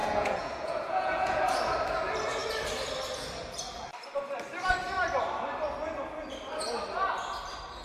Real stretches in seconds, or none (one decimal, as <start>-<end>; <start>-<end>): 1.4-7.8